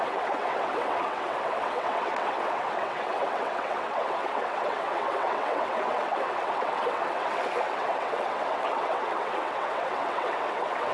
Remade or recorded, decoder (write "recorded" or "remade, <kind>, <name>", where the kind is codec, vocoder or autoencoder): remade, vocoder, WaveNeXt